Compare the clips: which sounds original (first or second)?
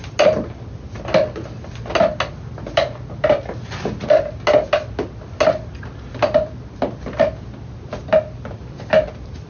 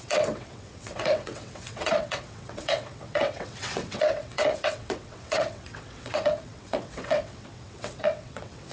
first